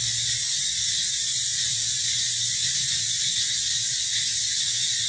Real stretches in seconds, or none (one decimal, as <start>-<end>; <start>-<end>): 0.0-5.1